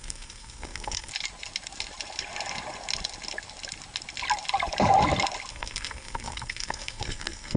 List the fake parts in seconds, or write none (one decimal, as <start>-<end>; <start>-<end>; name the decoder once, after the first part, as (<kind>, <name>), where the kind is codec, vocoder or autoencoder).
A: 0.0-1.1 (codec, SNAC); 5.5-7.6

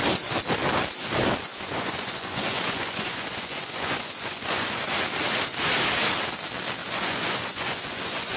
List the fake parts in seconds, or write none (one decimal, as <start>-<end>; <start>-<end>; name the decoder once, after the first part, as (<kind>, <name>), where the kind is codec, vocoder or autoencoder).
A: 1.4-4.9 (vocoder, Vocos); 6.8-8.4

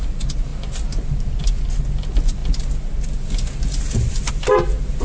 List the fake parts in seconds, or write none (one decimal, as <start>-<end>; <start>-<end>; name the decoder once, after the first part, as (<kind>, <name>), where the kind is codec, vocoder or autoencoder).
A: none

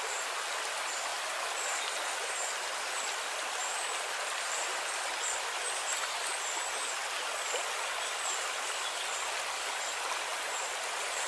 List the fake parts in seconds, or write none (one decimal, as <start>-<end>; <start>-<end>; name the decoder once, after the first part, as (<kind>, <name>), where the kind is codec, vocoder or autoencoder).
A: 0.0-7.0 (vocoder, BigVGAN v2); 7.9-10.3

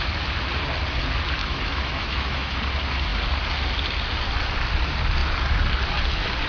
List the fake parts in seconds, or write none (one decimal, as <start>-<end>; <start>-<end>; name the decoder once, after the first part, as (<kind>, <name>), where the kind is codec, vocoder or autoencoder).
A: 1.4-2.6 (autoencoder, DAC-VAE)

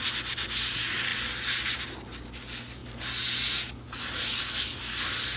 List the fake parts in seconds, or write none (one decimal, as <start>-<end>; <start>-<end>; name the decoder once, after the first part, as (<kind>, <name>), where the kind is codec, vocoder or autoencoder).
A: none

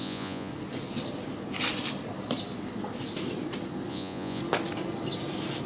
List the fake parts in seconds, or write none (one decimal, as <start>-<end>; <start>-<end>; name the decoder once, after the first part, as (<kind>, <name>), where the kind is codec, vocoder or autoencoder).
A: 0.0-0.5 (vocoder, Vocos); 3.9-4.4

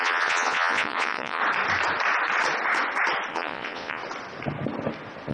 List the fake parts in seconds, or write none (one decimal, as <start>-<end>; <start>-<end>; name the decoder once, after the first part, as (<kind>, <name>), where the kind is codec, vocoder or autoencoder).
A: 0.0-1.4 (vocoder, Vocos); 3.3-4.0